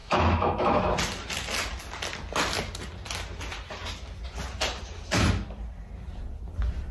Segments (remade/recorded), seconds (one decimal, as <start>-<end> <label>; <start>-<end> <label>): 0.0-0.8 remade; 0.8-6.9 recorded